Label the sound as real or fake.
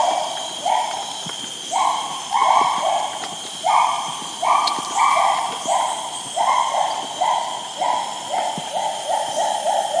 real